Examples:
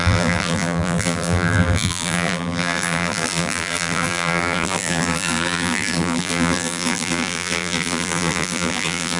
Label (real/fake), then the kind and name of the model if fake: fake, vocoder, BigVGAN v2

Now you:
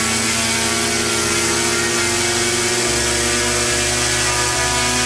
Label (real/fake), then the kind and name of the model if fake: real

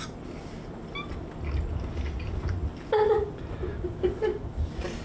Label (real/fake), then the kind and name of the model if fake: real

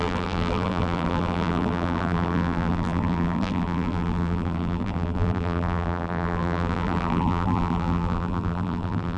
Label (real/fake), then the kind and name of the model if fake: fake, vocoder, BigVGAN v2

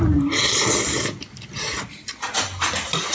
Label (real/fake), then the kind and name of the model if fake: real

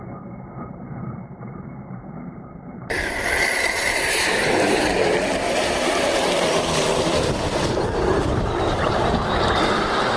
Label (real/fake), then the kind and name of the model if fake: fake, vocoder, BigVGAN v2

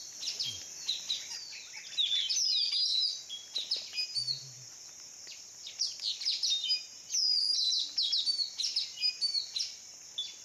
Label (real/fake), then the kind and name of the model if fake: real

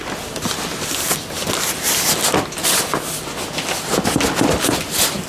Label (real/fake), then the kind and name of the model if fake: real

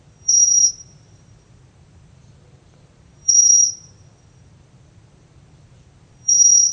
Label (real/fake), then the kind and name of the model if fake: fake, vocoder, BigVGAN v2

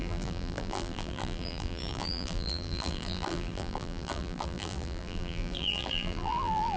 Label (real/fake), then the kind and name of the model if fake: fake, vocoder, BigVGAN v2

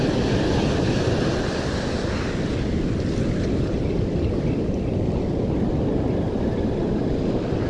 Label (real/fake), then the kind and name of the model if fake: fake, vocoder, BigVGAN v2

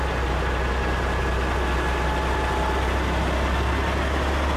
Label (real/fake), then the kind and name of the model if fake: real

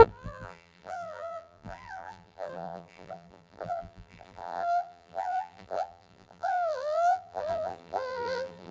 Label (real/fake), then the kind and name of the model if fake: fake, vocoder, BigVGAN v2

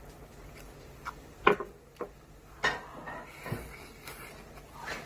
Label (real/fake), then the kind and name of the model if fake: real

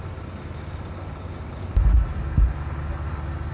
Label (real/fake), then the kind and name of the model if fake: real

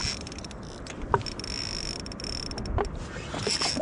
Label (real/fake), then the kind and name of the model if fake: real